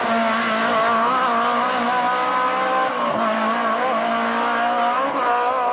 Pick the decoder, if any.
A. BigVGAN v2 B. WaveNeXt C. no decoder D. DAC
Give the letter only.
C